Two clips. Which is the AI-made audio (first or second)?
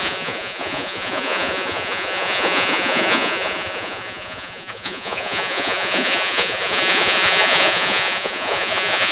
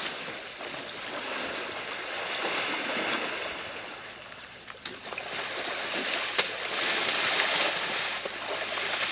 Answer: first